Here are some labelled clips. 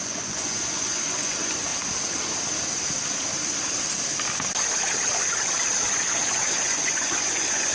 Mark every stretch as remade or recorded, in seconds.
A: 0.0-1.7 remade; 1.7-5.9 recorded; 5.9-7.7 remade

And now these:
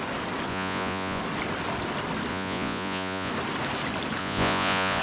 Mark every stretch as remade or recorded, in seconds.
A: 0.0-0.5 recorded; 0.5-1.2 remade; 1.2-2.3 recorded; 2.3-3.3 remade; 3.3-4.2 recorded; 4.2-5.0 remade

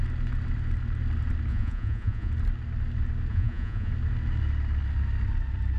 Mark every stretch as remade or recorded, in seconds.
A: 0.0-1.5 recorded; 1.5-2.3 remade; 2.3-3.3 recorded; 3.3-3.9 remade; 3.9-5.8 recorded

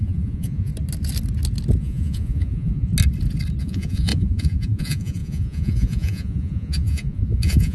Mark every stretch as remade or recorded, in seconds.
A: 0.0-0.7 remade; 0.7-1.8 recorded; 1.8-2.9 remade; 2.9-3.6 recorded; 3.6-7.7 remade

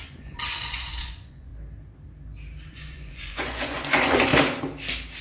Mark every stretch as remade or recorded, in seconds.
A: 0.0-1.5 remade; 1.5-2.7 recorded; 2.7-4.3 remade; 4.3-5.2 recorded